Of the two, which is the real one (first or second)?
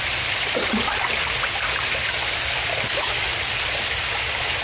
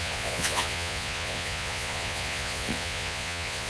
first